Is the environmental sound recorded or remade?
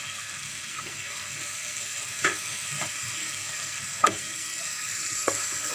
remade